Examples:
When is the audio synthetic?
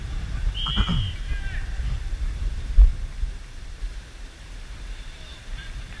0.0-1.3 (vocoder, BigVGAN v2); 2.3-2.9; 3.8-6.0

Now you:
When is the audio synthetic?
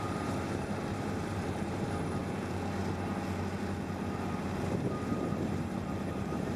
0.0-2.2 (vocoder, BigVGAN v2); 4.9-6.6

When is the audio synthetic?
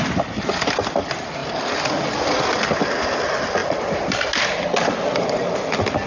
1.4-2.8 (vocoder, BigVGAN v2)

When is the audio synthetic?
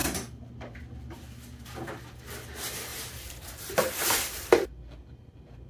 2.9-4.5 (vocoder, BigVGAN v2)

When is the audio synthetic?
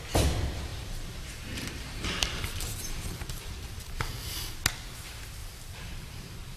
0.7-4.3 (vocoder, BigVGAN v2); 5.4-6.6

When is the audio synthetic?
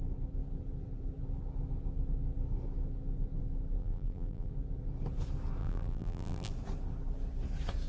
3.8-4.5 (vocoder, BigVGAN v2); 5.6-6.5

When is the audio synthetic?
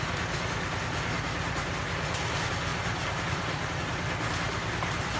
none